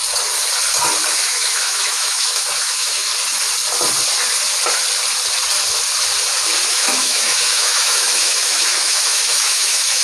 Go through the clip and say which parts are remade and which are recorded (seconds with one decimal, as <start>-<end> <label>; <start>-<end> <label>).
0.0-1.1 recorded; 1.1-3.1 remade; 3.1-6.7 recorded; 6.7-10.0 remade